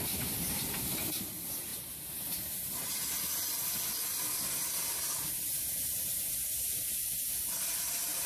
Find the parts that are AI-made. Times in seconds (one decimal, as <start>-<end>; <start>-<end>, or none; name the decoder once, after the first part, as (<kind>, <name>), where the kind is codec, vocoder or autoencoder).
0.0-3.3 (vocoder, BigVGAN v2); 4.5-7.0; 7.7-8.3